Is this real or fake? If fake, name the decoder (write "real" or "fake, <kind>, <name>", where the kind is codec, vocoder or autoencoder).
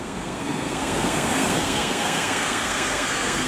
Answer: fake, codec, SNAC